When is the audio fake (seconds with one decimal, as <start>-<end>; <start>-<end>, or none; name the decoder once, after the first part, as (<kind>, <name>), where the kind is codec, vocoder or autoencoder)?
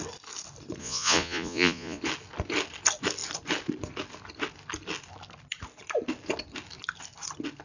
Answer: 0.8-2.0 (vocoder, Vocos)